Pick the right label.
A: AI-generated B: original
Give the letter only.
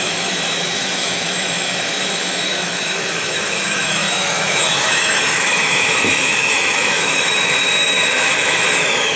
A